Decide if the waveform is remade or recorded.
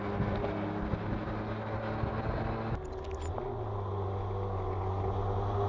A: recorded